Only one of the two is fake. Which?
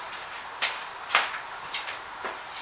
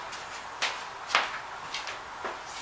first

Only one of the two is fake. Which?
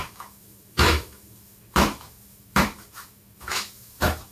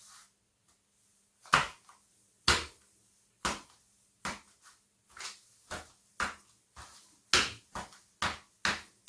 first